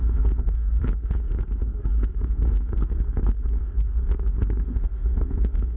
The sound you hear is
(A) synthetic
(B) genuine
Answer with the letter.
A